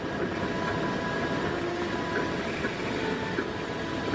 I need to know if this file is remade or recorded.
recorded